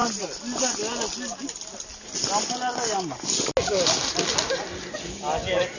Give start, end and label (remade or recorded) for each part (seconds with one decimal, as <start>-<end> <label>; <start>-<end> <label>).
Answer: 0.0-5.8 recorded